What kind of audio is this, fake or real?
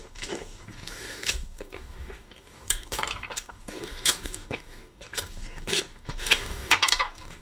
fake